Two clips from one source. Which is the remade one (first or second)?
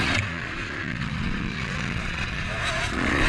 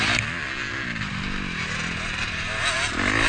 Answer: first